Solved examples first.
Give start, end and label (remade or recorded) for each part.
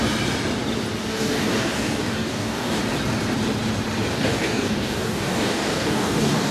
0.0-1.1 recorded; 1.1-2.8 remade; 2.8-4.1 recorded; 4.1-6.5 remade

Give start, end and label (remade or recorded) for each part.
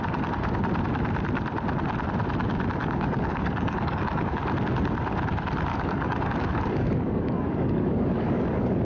0.0-2.8 recorded; 2.8-4.4 remade; 4.4-5.7 recorded; 5.7-8.8 remade